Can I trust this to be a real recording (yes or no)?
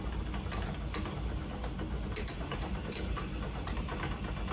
yes